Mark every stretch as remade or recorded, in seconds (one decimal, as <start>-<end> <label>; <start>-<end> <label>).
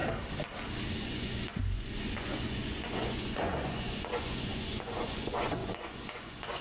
0.0-1.0 recorded; 1.0-6.6 remade